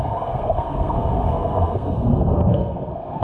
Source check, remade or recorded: remade